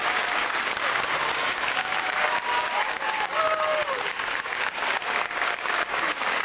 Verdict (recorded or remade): remade